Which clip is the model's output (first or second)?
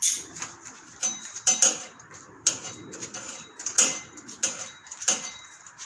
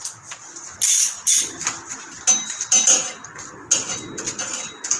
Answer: first